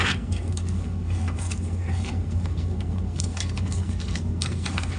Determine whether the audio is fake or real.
fake